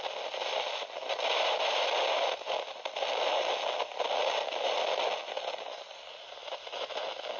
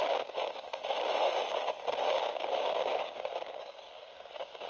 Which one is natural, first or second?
first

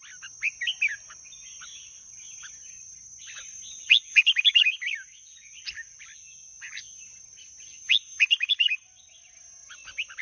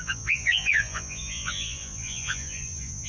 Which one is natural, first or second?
first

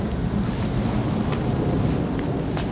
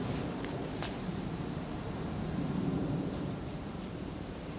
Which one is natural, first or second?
first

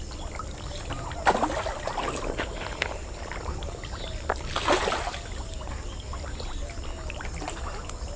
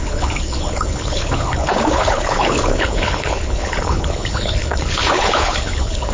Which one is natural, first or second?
first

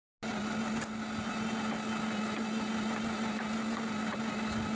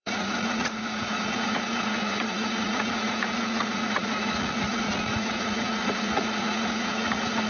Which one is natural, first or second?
first